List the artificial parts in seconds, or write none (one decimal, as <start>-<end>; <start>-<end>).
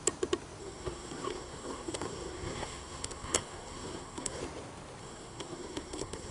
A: 0.6-4.4; 5.0-6.3